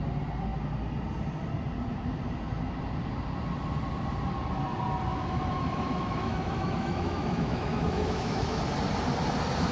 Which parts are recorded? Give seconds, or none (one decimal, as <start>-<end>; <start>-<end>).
0.0-5.1; 8.6-9.7